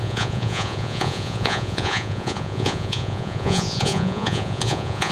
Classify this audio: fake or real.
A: fake